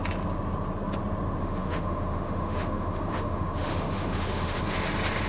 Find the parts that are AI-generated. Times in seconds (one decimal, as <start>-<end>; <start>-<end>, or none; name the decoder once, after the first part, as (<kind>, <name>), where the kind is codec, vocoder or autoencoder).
1.4-4.6 (autoencoder, DAC-VAE)